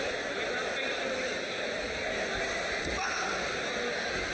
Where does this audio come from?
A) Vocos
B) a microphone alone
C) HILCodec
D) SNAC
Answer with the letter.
B